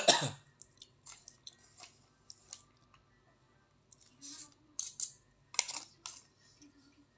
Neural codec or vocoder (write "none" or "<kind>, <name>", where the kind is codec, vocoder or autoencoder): none